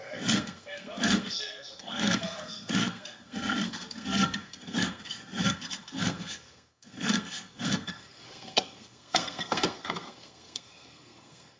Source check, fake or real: fake